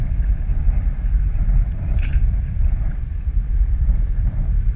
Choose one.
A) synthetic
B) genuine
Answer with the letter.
A